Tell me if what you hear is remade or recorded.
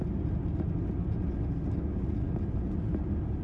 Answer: recorded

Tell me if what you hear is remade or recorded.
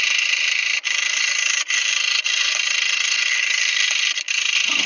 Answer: recorded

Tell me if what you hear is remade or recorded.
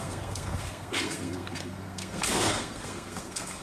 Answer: remade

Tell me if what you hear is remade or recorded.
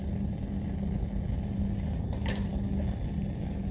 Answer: recorded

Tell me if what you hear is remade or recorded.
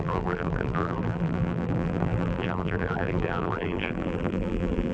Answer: remade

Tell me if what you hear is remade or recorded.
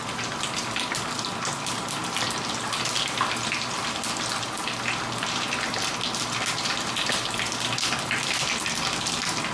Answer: recorded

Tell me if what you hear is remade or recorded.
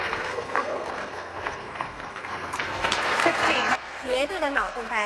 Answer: remade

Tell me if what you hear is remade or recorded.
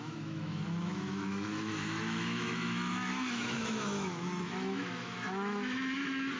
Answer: remade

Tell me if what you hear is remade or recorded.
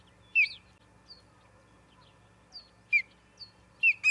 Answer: recorded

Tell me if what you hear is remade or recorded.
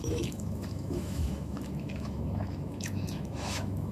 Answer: remade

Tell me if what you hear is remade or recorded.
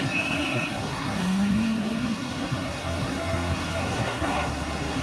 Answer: remade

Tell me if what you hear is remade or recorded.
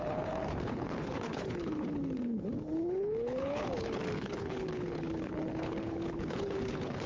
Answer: remade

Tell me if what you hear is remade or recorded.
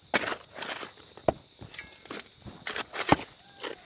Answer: recorded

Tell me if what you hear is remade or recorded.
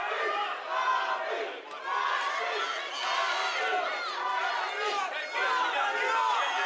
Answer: recorded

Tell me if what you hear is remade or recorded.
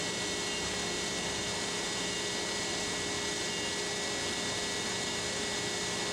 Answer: recorded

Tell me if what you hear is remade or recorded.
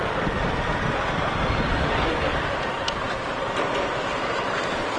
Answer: recorded